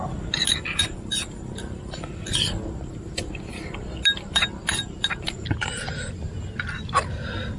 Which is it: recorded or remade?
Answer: recorded